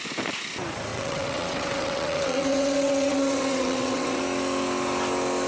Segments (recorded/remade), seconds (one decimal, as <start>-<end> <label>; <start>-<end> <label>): 0.0-0.9 recorded; 0.9-4.2 remade; 4.2-5.5 recorded